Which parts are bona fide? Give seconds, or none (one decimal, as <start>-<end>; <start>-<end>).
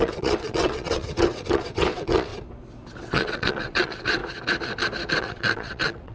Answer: 2.3-3.0; 4.2-5.2